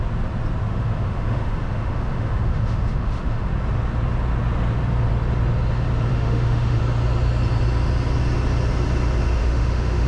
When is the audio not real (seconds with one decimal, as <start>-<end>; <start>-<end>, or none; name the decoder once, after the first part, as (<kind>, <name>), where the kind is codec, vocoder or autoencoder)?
0.7-3.5 (autoencoder, DAC-VAE); 6.1-6.8; 9.4-10.1